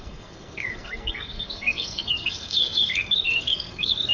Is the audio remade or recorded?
remade